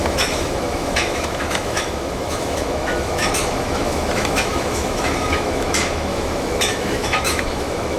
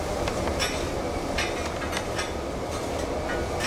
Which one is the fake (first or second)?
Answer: first